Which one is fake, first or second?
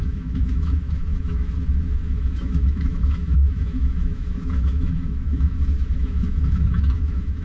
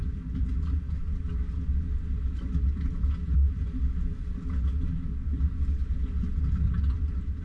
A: first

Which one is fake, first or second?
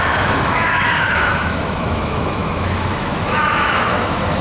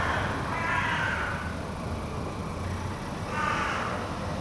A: first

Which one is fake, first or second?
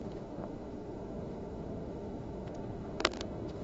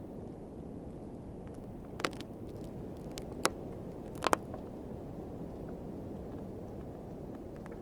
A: first